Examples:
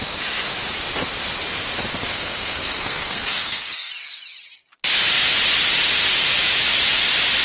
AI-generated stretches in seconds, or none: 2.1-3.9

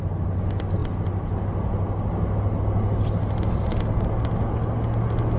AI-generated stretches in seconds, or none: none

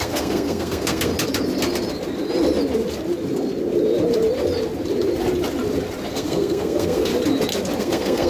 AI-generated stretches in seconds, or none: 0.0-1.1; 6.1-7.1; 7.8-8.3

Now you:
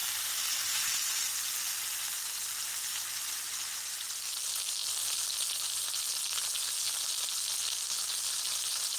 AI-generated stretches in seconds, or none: none